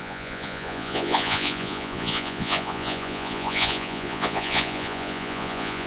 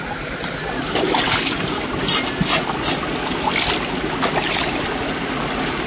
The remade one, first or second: first